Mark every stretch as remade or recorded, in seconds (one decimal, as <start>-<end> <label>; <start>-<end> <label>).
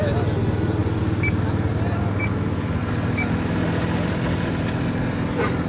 0.0-5.7 recorded